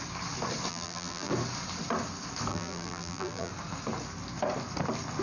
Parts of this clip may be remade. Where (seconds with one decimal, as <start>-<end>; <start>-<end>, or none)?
0.7-1.3; 2.5-3.5